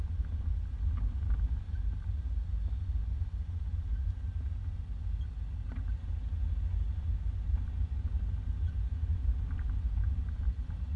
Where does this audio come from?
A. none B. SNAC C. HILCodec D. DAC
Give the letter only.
A